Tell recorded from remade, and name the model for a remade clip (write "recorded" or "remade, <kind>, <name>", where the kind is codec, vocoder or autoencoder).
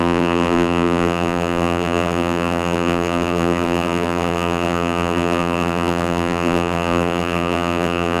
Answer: remade, vocoder, BigVGAN v2